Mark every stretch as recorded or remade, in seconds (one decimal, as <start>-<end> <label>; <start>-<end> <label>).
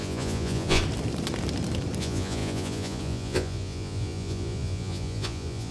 0.0-0.8 remade; 0.8-2.0 recorded; 2.0-5.7 remade